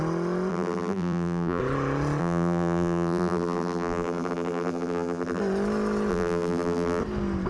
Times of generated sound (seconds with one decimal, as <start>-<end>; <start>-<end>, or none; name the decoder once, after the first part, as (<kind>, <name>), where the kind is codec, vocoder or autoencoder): 0.5-1.6 (vocoder, BigVGAN v2); 2.2-5.4; 6.1-7.0